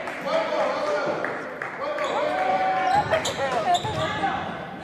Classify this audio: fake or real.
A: real